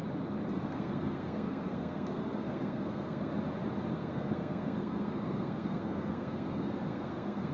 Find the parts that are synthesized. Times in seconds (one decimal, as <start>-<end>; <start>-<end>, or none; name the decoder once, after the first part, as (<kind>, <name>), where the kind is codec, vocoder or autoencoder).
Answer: 0.6-3.3 (codec, SNAC); 3.9-7.5